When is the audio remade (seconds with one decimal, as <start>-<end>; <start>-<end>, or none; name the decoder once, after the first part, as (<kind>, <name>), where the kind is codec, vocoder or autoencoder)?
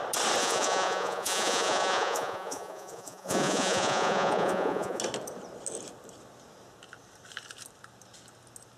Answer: 0.4-5.0 (vocoder, Vocos)